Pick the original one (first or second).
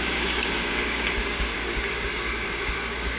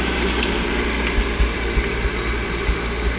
second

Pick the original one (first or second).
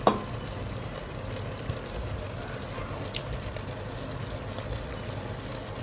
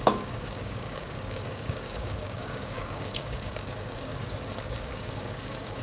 first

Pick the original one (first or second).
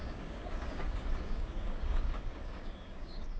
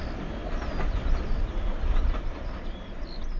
second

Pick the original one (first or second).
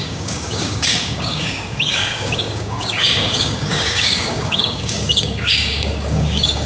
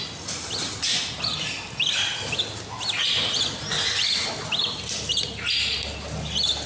second